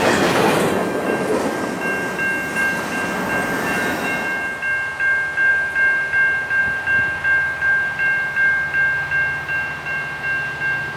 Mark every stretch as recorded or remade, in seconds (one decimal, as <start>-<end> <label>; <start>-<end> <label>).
0.0-11.0 recorded

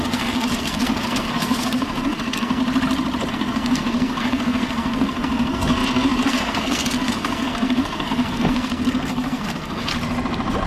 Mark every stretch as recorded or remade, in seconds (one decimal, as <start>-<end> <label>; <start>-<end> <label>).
0.0-2.6 remade; 2.6-3.3 recorded; 3.3-9.9 remade; 9.9-10.7 recorded